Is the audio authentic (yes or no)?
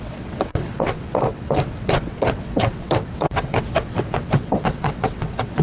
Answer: no